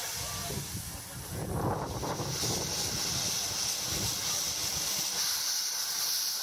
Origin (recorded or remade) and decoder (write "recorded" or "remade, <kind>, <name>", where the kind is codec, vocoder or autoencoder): recorded